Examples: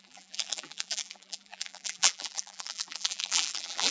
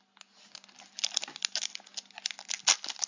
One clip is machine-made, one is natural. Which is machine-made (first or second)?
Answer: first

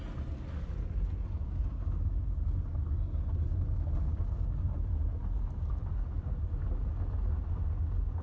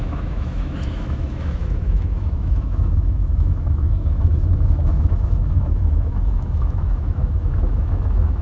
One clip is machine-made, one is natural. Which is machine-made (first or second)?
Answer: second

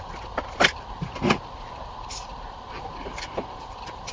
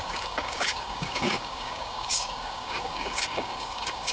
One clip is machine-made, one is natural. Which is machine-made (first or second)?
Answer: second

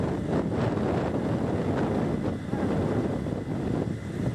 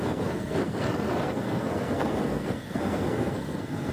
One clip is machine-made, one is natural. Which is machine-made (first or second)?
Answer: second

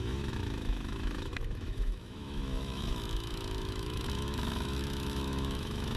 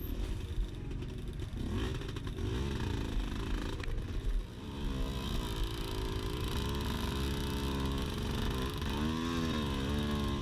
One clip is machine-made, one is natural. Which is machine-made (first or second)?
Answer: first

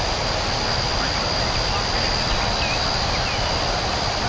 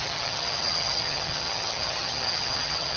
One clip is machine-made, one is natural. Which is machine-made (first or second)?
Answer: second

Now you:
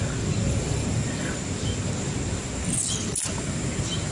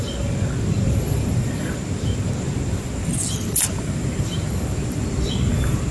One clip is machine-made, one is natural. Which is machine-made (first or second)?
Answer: second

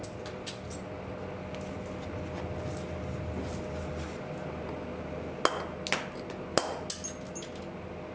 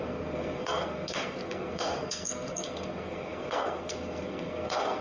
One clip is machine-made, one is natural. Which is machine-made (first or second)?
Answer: second